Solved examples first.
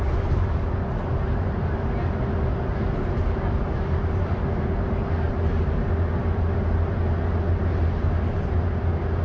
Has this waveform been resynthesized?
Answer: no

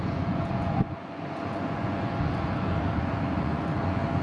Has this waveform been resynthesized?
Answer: yes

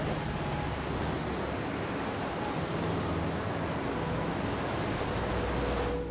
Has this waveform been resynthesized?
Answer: no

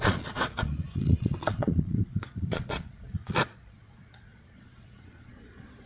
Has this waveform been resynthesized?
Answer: yes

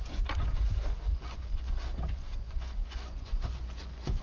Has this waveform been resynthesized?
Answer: yes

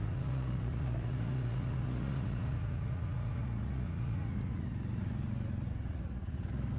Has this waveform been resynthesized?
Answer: yes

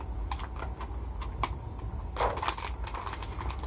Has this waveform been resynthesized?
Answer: no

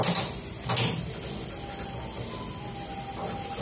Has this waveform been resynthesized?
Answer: no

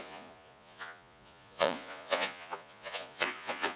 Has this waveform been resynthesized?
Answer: yes